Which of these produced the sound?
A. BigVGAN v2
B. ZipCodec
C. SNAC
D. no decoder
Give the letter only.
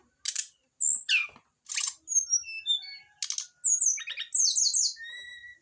D